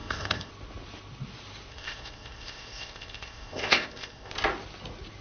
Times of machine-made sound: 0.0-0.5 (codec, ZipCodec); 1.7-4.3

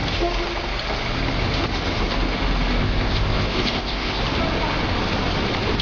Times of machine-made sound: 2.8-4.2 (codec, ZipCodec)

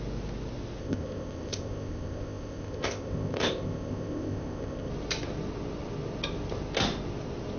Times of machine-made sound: 0.8-4.9 (codec, ZipCodec)

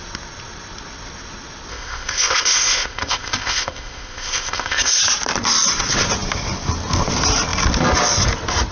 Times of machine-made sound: 1.7-5.0 (codec, ZipCodec)

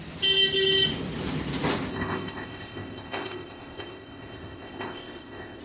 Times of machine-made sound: 1.9-5.6 (codec, ZipCodec)

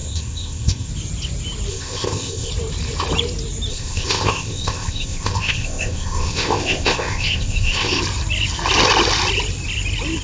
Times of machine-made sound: 0.0-0.9 (codec, ZipCodec); 1.7-2.5; 3.7-8.0

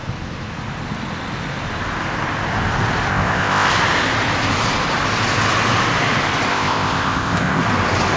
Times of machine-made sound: 3.1-3.7 (codec, ZipCodec); 6.5-7.6